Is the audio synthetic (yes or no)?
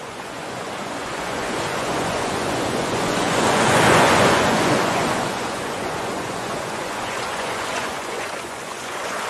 yes